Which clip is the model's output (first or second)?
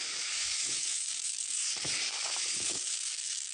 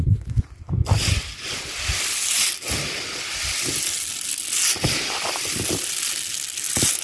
first